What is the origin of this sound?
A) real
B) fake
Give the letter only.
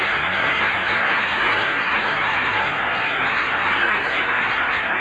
B